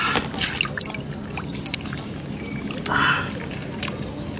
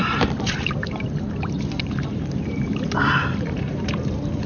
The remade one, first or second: second